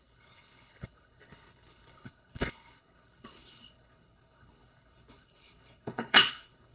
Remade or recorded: remade